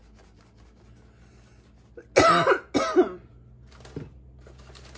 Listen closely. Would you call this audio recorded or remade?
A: recorded